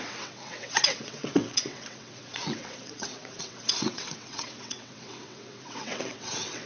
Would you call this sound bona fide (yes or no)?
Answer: no